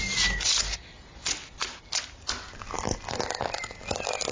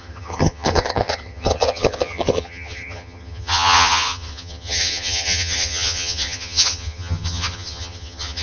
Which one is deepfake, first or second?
second